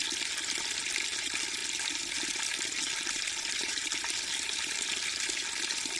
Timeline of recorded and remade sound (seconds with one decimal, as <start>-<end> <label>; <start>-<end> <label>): 0.0-3.6 recorded; 3.6-4.9 remade; 4.9-6.0 recorded